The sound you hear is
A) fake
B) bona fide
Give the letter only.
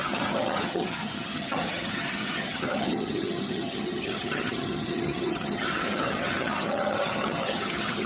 A